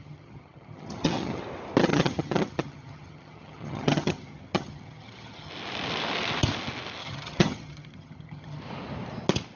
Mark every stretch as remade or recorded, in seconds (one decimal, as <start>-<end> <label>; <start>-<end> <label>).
0.0-1.4 remade; 1.4-1.8 recorded; 1.8-5.5 remade; 5.5-7.0 recorded; 7.0-8.6 remade; 8.6-9.6 recorded